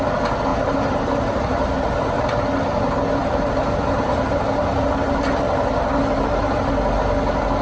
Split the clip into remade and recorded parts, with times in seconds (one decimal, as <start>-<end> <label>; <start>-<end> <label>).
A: 0.0-0.5 recorded; 0.5-2.2 remade; 2.2-3.2 recorded; 3.2-6.7 remade; 6.7-7.6 recorded